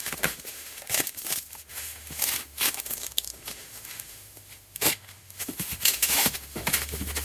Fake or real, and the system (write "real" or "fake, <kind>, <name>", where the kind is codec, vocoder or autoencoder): fake, autoencoder, DAC-VAE